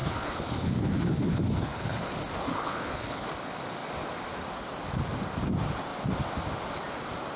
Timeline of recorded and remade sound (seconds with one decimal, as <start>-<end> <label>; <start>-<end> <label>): 0.0-3.3 remade; 3.3-7.4 recorded